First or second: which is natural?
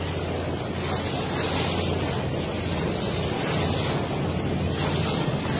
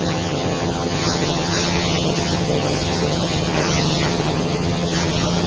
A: first